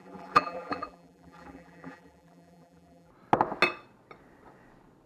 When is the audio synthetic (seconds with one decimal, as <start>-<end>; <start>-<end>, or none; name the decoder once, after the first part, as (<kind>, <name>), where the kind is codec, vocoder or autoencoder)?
0.0-3.1 (vocoder, BigVGAN v2)